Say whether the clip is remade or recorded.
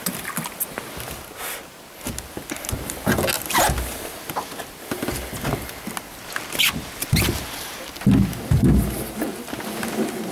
recorded